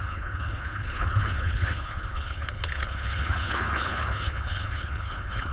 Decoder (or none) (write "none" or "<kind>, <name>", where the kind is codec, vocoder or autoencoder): codec, HILCodec